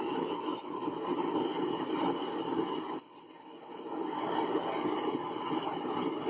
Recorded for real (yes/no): yes